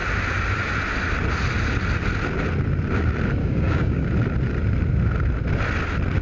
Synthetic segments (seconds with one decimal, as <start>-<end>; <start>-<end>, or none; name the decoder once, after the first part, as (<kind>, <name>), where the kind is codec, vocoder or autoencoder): 3.4-4.1 (codec, DAC)